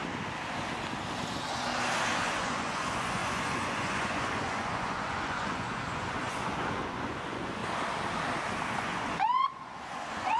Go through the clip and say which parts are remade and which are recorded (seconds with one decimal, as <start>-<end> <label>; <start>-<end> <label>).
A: 0.0-2.2 recorded; 2.2-7.6 remade; 7.6-8.7 recorded; 8.7-10.4 remade